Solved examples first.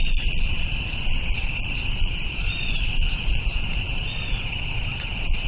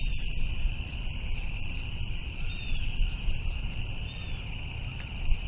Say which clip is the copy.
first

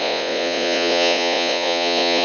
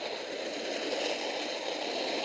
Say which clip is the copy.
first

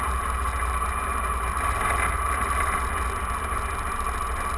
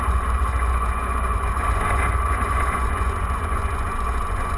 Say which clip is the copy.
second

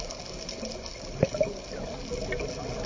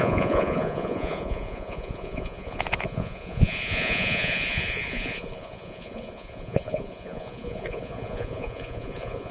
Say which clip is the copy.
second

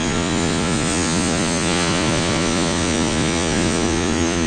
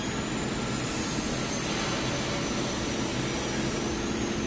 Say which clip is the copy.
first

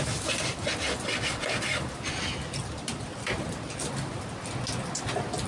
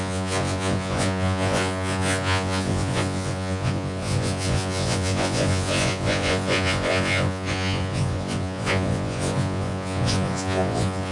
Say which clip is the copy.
second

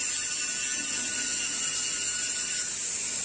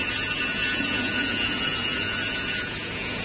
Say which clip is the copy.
second